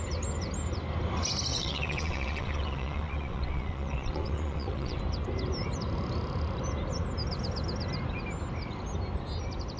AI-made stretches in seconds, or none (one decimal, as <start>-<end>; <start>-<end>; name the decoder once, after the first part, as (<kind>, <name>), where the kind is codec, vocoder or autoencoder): 1.5-5.0 (vocoder, WaveNeXt)